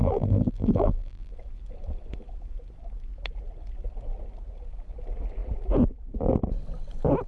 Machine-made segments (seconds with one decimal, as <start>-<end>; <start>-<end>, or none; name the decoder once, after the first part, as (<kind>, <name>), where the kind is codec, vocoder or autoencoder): 0.0-1.3 (vocoder, BigVGAN v2)